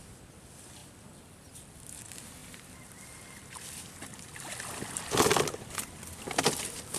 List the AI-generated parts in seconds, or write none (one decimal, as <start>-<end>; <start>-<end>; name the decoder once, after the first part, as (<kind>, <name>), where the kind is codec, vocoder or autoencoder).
none